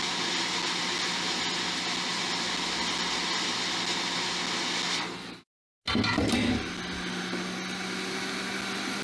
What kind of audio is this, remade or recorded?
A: recorded